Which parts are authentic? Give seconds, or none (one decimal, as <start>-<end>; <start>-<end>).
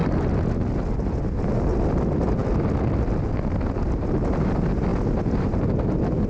0.0-6.3